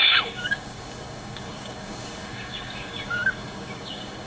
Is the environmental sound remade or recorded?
remade